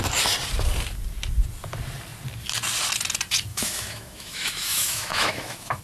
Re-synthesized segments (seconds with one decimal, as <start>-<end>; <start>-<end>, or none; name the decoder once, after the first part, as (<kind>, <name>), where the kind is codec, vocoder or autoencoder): 3.5-5.8 (autoencoder, DAC-VAE)